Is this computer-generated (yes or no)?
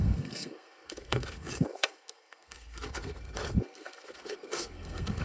yes